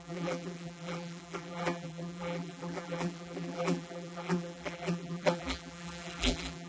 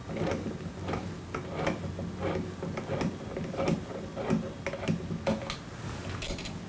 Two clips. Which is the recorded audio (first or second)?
second